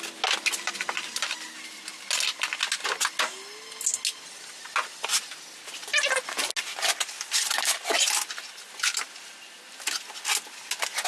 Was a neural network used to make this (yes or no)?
no